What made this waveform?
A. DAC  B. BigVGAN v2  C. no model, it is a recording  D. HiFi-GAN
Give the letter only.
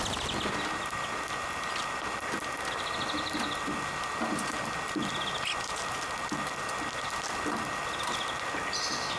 C